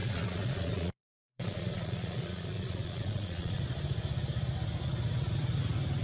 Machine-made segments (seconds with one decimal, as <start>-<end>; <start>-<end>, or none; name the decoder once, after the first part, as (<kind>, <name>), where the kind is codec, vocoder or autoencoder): 0.0-3.6 (vocoder, Vocos)